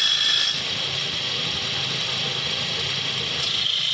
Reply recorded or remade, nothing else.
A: recorded